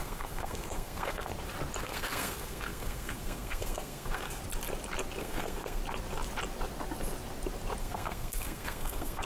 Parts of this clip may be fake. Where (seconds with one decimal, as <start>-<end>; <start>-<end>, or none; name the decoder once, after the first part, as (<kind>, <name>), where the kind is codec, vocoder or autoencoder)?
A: 0.0-1.3 (codec, SNAC); 1.8-4.4; 5.2-5.8; 7.8-9.2